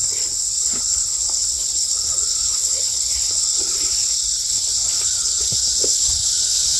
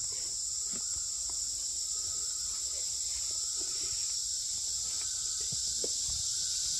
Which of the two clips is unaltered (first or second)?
second